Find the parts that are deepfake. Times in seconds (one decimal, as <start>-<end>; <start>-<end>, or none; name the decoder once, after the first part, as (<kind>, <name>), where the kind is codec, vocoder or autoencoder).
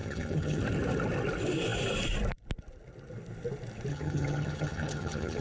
0.0-0.6 (vocoder, HiFi-GAN); 3.9-5.4